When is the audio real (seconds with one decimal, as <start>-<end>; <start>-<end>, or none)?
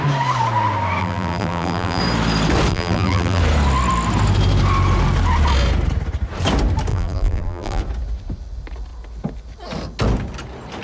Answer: 0.0-1.0; 2.0-2.7; 3.4-6.9; 7.8-10.8